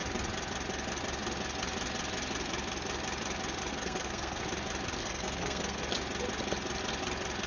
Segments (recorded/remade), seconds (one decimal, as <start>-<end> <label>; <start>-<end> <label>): 0.0-3.7 recorded; 3.7-4.4 remade; 4.4-5.0 recorded; 5.0-5.8 remade; 5.8-7.5 recorded